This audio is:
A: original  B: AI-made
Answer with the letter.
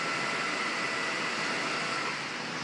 A